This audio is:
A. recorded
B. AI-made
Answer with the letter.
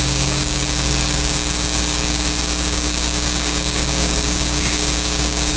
B